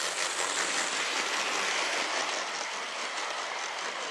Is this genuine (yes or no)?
yes